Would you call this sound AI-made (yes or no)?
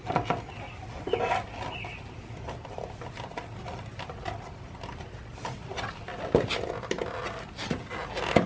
no